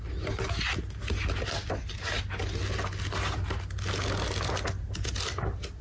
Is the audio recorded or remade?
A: recorded